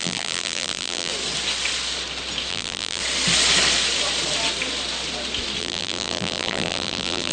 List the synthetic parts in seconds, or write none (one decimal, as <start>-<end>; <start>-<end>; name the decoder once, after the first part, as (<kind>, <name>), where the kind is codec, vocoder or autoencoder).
0.0-1.1 (vocoder, BigVGAN v2); 2.5-3.0; 5.6-7.3